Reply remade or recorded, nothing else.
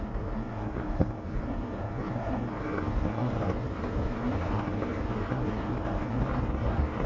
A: remade